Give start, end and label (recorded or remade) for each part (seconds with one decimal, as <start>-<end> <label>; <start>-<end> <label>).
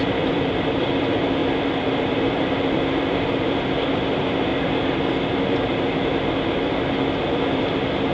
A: 0.0-4.5 remade; 4.5-7.3 recorded; 7.3-8.1 remade